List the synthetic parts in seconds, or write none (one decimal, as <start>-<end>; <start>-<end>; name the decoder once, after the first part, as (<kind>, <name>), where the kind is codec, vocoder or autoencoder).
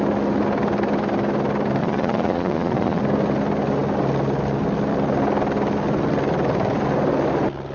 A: 1.8-3.0 (vocoder, Vocos)